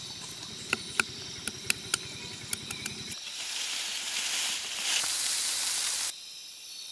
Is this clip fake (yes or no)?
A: no